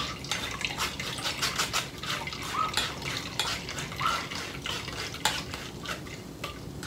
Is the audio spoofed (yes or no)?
no